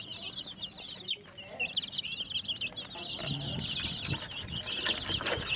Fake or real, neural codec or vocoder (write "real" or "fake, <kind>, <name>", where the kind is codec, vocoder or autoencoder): real